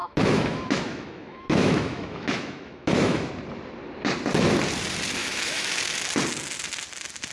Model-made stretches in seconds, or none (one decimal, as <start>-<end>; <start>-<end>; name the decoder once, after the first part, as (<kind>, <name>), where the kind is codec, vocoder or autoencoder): 0.0-3.3 (autoencoder, DAC-VAE); 5.2-5.8